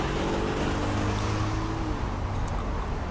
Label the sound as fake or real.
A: real